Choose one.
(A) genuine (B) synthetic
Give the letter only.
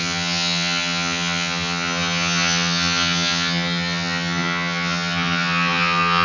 B